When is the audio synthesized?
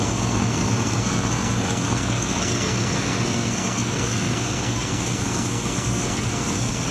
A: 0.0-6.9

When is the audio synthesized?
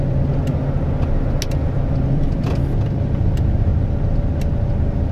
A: none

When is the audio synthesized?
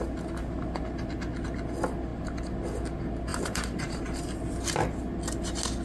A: 3.3-4.2